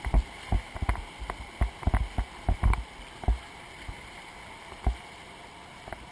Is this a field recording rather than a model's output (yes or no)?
yes